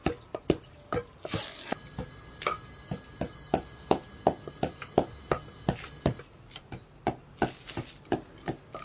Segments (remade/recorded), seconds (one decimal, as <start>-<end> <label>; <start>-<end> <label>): 0.0-8.8 recorded